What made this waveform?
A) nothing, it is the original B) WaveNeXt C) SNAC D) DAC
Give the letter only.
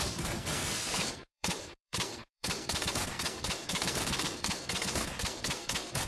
C